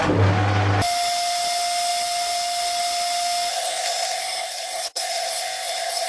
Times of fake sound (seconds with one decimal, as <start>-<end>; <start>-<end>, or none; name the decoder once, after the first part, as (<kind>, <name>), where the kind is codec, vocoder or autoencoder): 3.5-6.1 (codec, SNAC)

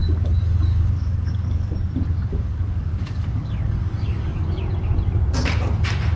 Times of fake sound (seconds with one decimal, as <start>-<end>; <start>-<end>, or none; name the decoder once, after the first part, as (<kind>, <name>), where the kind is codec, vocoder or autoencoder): 0.0-1.7 (codec, DAC); 2.3-4.6

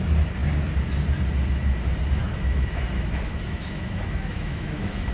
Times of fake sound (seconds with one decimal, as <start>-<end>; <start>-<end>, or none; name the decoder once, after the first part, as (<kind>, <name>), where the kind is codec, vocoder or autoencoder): 2.2-5.1 (autoencoder, DAC-VAE)

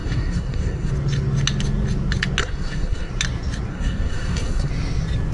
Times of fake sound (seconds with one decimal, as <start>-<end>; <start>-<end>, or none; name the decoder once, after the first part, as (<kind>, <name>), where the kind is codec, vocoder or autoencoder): 0.0-0.9 (codec, SNAC); 2.4-3.1; 3.7-4.7

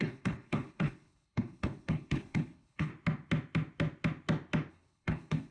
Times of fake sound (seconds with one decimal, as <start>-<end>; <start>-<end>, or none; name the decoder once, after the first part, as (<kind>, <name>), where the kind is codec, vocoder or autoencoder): 0.0-2.9 (codec, HILCodec); 4.7-5.5

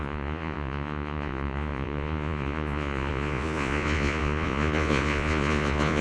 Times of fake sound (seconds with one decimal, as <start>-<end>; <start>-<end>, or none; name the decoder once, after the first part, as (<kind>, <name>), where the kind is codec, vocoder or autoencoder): 0.0-6.0 (vocoder, Vocos)

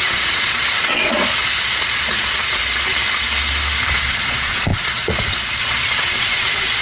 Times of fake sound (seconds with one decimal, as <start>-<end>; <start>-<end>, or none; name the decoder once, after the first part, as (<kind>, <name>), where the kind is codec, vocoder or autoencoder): 0.0-2.6 (vocoder, Vocos); 3.9-6.8

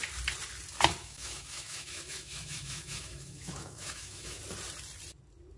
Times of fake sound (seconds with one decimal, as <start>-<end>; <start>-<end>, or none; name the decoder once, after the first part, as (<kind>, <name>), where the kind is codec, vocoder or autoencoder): 1.0-4.4 (autoencoder, DAC-VAE)